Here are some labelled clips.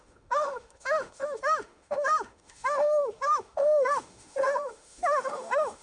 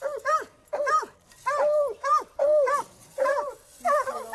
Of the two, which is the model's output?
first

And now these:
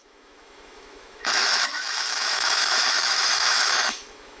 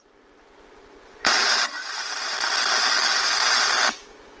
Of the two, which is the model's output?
first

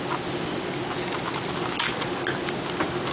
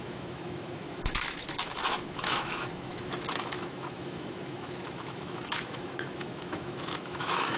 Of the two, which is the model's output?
second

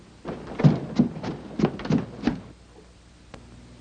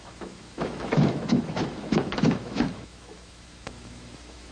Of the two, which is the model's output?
second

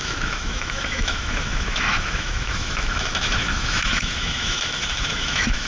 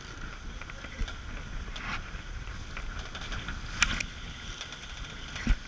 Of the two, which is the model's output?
first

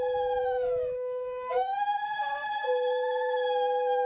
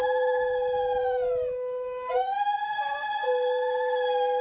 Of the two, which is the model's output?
first